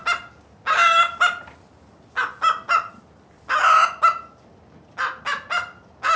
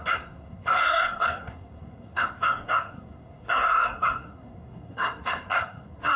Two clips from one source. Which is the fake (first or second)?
second